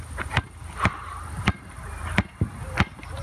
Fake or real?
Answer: fake